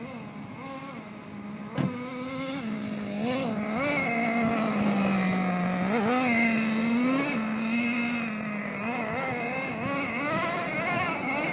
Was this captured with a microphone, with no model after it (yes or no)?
yes